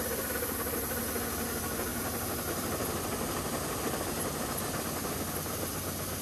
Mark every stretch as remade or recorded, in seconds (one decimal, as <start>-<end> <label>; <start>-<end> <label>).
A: 0.0-6.2 recorded